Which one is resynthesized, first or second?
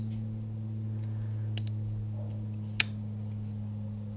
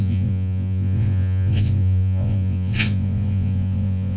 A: second